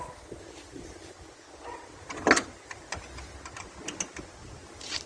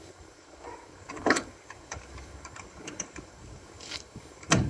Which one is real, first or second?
first